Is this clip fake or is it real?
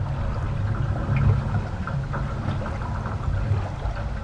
real